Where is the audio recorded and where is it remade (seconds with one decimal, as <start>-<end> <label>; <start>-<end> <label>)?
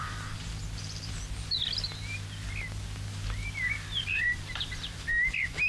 0.0-0.6 remade; 0.6-4.0 recorded; 4.0-5.7 remade